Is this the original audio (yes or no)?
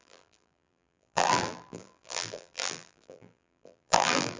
no